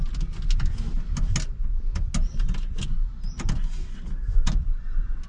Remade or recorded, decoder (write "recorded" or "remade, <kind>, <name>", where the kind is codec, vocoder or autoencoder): recorded